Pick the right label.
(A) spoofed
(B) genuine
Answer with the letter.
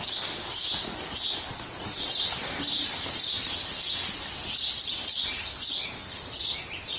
B